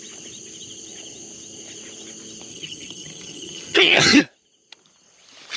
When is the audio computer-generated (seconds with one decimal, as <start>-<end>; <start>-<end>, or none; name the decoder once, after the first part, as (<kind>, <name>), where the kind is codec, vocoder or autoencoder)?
2.5-4.2 (vocoder, HiFi-GAN)